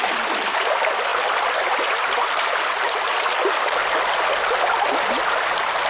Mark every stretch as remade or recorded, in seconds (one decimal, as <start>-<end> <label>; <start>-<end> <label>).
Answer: 0.0-5.9 recorded